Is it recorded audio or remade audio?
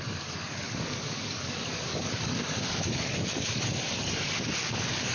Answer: remade